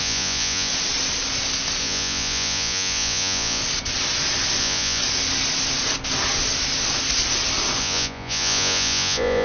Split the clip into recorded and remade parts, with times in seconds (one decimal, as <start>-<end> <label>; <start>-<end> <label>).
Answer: 0.0-0.7 remade; 0.7-1.8 recorded; 1.8-3.6 remade; 3.6-4.6 recorded; 4.6-5.0 remade; 5.0-7.8 recorded; 7.8-9.4 remade

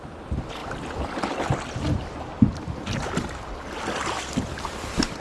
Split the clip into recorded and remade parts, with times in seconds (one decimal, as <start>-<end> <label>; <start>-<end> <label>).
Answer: 0.0-5.2 recorded

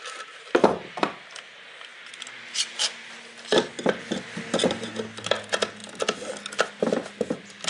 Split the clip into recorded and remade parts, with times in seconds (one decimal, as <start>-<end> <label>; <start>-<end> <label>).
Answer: 0.0-7.7 recorded

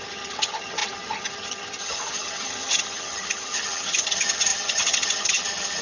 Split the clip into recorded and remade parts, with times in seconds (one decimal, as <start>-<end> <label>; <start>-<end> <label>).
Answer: 0.0-5.8 remade